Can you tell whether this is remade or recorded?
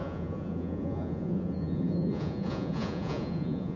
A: remade